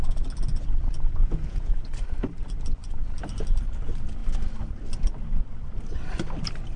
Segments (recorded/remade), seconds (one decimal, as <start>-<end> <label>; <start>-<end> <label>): 0.0-1.2 recorded; 1.2-1.7 remade; 1.7-6.8 recorded

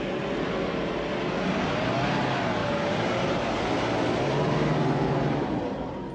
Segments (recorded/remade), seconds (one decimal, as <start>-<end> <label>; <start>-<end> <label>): 0.0-2.6 recorded; 2.6-5.5 remade; 5.5-6.1 recorded

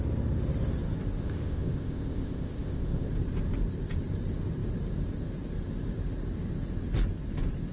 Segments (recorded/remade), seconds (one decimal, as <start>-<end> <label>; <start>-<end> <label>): 0.0-1.2 recorded; 1.2-3.1 remade; 3.1-7.7 recorded